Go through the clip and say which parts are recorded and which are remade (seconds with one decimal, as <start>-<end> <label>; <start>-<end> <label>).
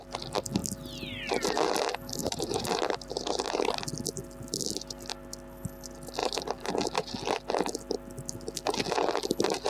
0.0-2.2 recorded; 2.2-3.7 remade; 3.7-6.2 recorded; 6.2-6.7 remade; 6.7-9.7 recorded